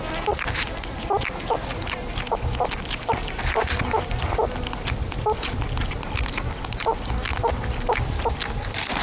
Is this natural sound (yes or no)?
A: yes